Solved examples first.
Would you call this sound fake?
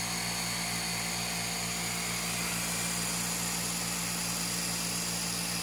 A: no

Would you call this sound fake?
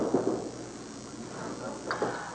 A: no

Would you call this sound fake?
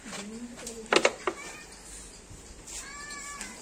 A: no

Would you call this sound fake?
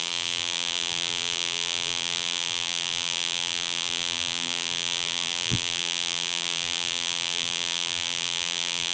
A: yes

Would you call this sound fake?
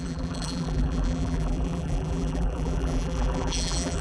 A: yes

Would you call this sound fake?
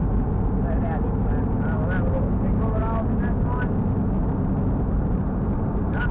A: no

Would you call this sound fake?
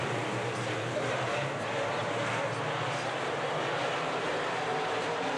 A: yes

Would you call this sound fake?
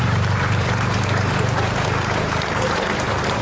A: yes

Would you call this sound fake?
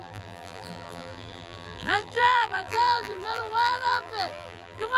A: yes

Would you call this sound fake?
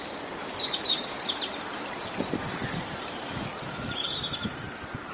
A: yes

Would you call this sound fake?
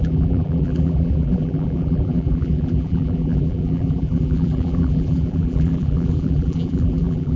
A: yes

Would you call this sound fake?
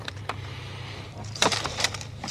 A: yes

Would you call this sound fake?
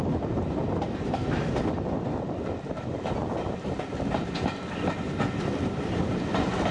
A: no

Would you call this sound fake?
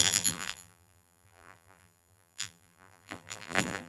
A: yes